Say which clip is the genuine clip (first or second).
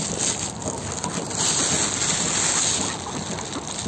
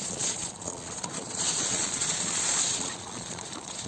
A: first